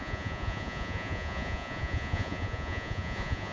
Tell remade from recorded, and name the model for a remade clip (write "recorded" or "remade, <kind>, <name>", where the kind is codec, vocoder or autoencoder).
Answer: remade, vocoder, Vocos